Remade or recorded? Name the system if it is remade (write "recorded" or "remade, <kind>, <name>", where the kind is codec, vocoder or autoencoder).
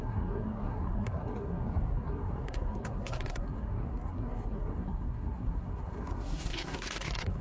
remade, codec, SNAC